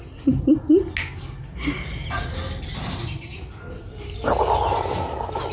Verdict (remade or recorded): recorded